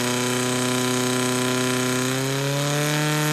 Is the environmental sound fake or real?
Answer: real